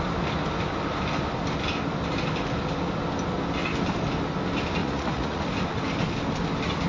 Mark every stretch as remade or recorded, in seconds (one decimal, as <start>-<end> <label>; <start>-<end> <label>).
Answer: 0.0-4.8 recorded; 4.8-5.4 remade; 5.4-6.9 recorded